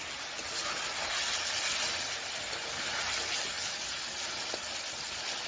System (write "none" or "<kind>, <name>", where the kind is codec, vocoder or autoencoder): none